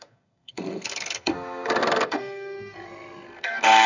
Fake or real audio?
fake